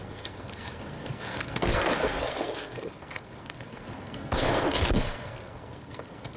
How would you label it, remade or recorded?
remade